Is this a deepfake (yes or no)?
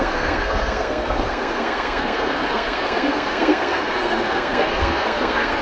yes